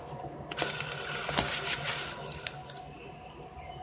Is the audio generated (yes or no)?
no